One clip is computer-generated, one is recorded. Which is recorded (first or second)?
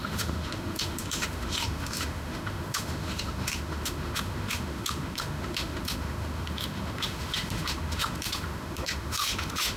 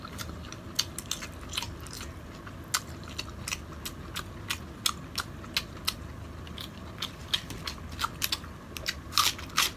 second